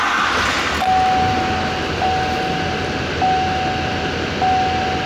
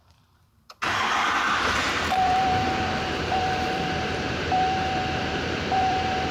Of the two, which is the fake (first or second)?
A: second